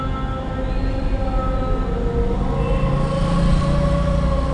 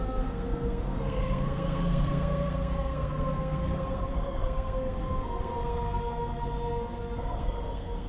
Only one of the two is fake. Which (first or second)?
second